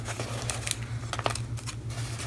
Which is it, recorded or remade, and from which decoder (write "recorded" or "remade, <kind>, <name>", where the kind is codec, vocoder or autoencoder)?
recorded